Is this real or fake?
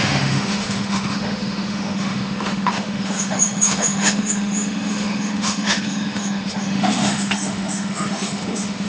fake